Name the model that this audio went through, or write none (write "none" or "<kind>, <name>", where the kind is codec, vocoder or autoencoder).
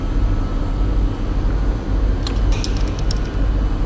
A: none